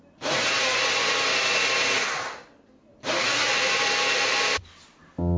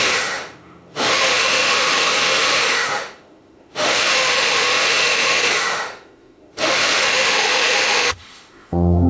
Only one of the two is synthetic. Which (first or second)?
second